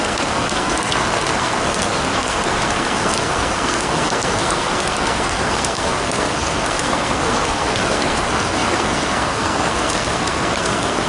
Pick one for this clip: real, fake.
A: fake